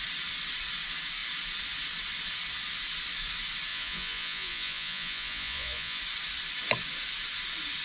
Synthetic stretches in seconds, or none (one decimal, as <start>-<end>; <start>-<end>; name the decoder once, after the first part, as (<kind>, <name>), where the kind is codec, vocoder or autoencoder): 3.7-6.0 (vocoder, Vocos)